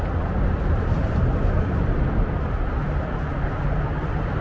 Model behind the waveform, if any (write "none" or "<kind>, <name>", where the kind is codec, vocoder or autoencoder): none